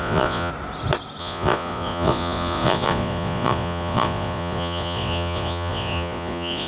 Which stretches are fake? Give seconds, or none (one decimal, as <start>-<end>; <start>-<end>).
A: 0.0-0.5; 1.2-6.7